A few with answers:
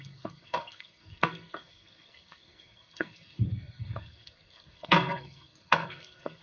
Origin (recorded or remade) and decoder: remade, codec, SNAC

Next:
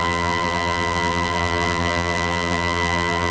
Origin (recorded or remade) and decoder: remade, vocoder, BigVGAN v2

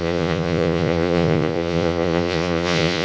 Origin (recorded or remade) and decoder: remade, vocoder, Vocos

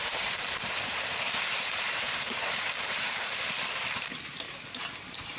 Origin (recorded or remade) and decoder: remade, vocoder, BigVGAN v2